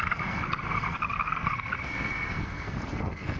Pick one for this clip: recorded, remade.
remade